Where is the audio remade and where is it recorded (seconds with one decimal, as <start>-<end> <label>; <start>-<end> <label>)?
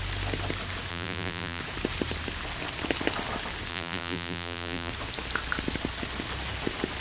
0.0-0.9 recorded; 0.9-1.6 remade; 1.6-3.7 recorded; 3.7-4.9 remade; 4.9-7.0 recorded